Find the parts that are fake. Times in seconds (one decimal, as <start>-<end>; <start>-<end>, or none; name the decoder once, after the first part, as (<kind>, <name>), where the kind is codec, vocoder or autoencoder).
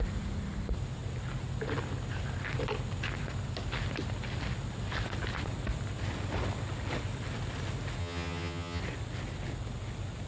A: 8.0-8.8 (vocoder, HiFi-GAN)